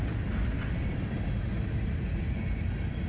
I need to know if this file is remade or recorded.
recorded